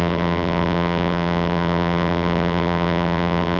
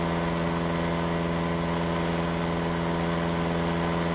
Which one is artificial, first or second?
first